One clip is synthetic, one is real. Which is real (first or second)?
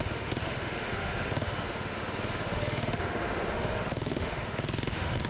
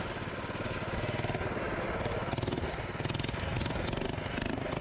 second